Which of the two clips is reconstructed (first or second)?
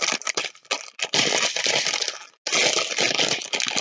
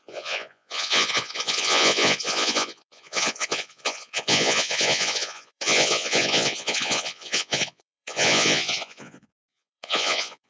second